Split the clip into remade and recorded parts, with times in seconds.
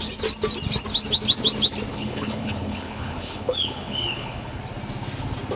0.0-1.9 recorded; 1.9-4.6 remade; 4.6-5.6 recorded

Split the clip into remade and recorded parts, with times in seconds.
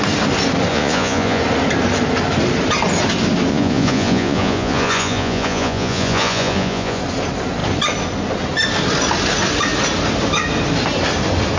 0.0-0.7 recorded; 0.7-1.4 remade; 1.4-3.5 recorded; 3.5-7.0 remade; 7.0-11.6 recorded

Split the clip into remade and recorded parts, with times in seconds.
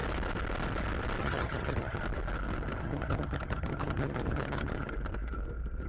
0.0-1.2 recorded; 1.2-2.0 remade; 2.0-2.8 recorded; 2.8-4.9 remade; 4.9-5.9 recorded